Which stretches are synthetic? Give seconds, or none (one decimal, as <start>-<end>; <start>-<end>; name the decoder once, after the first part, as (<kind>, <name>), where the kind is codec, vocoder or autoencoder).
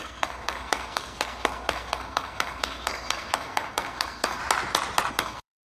0.0-4.4 (codec, SNAC); 5.1-5.7